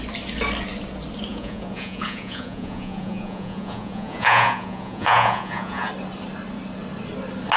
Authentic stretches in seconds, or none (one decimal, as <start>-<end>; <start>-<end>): 0.0-1.3; 5.9-7.6